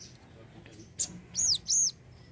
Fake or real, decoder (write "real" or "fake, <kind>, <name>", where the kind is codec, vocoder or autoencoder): real